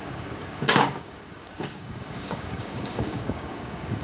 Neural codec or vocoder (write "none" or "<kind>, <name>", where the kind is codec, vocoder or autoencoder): codec, DAC